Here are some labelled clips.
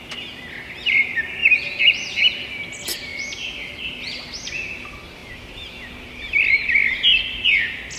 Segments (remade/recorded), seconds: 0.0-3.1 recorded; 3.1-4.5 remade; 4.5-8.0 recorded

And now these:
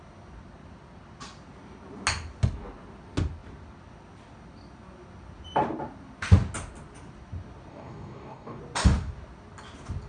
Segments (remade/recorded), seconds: 0.0-7.7 recorded; 7.7-8.6 remade; 8.6-10.1 recorded

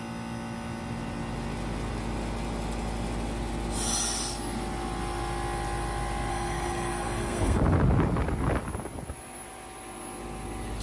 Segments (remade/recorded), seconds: 0.0-6.3 recorded; 6.3-7.6 remade; 7.6-10.8 recorded

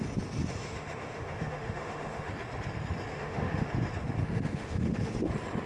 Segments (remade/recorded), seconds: 0.0-0.6 recorded; 0.6-2.3 remade; 2.3-3.1 recorded; 3.1-3.7 remade; 3.7-4.2 recorded; 4.2-5.1 remade; 5.1-5.7 recorded

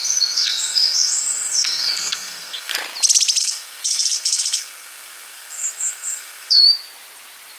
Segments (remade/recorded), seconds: 0.0-2.7 remade; 2.7-3.4 recorded; 3.4-6.6 remade; 6.6-7.6 recorded

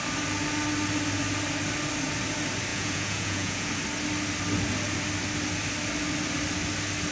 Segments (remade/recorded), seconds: 0.0-2.7 recorded; 2.7-3.7 remade; 3.7-7.1 recorded

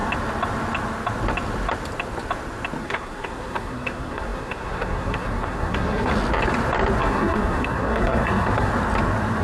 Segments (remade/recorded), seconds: 0.0-2.8 recorded; 2.8-6.1 remade; 6.1-7.0 recorded; 7.0-8.7 remade; 8.7-9.4 recorded